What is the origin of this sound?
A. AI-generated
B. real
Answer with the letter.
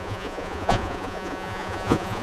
A